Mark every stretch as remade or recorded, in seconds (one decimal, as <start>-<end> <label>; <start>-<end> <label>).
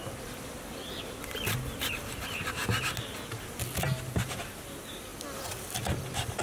0.0-5.1 recorded; 5.1-5.7 remade; 5.7-6.4 recorded